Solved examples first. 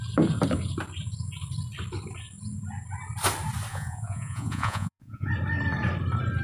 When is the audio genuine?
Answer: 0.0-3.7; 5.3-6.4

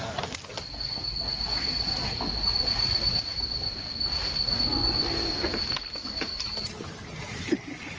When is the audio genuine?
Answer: 0.0-8.0

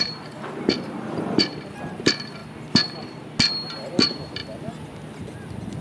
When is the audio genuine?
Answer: 2.4-3.5; 4.4-5.8

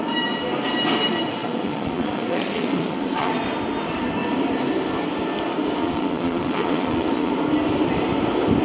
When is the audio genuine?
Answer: 0.0-1.4; 3.3-5.8; 7.3-8.6

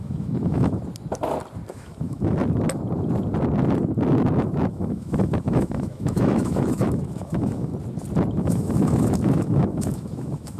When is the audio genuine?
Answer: 0.8-1.7; 2.4-4.7; 7.7-8.4

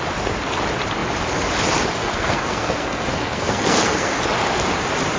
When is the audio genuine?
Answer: 0.0-2.0; 4.2-5.2

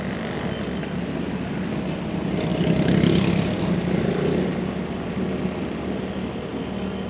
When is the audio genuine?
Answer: 0.0-7.1